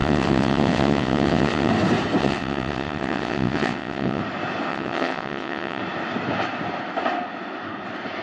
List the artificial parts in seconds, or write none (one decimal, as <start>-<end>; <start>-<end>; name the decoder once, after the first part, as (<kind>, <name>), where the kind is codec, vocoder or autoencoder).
0.0-1.7 (vocoder, WaveNeXt); 2.2-4.2; 4.7-5.8